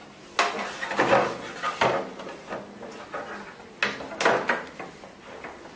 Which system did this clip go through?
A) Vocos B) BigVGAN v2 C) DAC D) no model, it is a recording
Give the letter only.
D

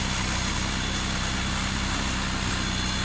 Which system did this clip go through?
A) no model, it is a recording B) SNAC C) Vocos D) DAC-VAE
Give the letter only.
A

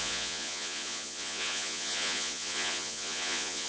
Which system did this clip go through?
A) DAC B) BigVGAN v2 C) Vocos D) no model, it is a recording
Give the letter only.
C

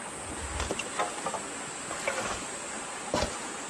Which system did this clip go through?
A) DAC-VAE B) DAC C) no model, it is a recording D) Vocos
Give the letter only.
C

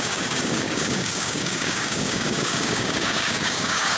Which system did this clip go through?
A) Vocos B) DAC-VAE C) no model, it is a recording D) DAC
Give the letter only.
D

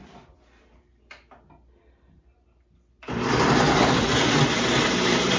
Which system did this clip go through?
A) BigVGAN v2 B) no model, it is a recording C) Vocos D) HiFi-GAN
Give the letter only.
B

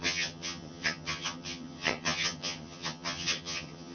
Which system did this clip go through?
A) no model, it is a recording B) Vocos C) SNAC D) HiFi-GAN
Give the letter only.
D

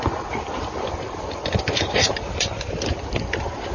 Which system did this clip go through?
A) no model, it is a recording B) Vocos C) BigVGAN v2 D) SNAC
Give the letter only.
A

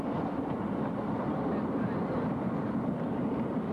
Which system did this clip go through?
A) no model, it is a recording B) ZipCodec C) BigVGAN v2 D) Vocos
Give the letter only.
C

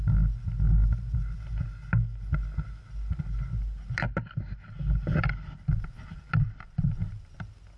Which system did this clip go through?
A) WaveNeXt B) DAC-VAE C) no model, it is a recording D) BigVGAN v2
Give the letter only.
C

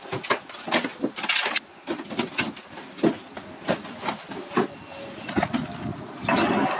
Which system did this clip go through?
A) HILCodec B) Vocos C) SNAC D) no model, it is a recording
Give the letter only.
D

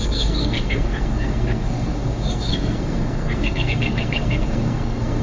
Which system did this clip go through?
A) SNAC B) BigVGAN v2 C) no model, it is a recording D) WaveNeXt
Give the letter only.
A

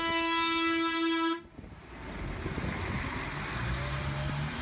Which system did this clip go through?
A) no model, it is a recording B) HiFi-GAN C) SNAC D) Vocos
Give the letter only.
A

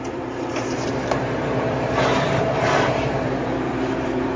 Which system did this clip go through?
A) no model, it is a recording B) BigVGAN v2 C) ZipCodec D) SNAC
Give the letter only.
B